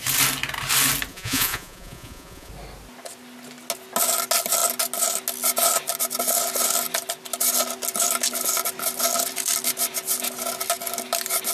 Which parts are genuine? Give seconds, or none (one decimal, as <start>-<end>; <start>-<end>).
0.0-1.1; 2.5-11.5

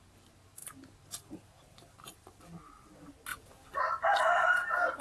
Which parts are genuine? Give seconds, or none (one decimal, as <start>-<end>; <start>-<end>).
0.0-5.0